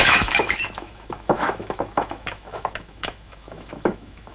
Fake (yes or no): yes